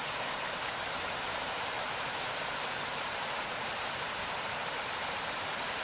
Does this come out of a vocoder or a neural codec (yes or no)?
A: yes